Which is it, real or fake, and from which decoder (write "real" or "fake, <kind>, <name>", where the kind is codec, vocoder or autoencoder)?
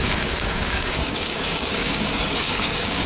fake, codec, DAC